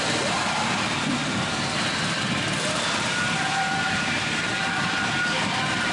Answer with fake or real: fake